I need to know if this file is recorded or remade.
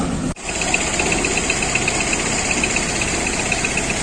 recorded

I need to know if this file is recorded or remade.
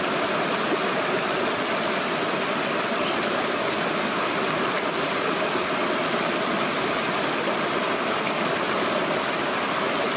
recorded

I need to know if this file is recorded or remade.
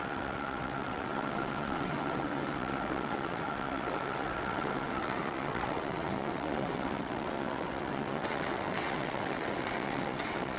remade